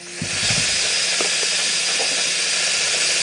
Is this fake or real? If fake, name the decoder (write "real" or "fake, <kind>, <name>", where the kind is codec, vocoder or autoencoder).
real